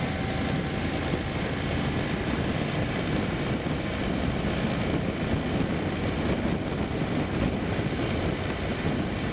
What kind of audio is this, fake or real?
real